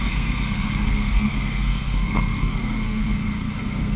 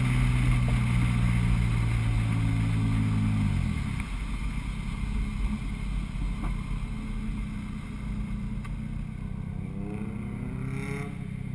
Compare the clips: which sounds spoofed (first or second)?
first